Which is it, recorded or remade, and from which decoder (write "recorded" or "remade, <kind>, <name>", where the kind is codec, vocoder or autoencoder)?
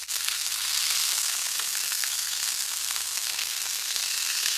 remade, codec, SNAC